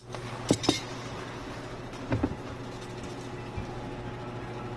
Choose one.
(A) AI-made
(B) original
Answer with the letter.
B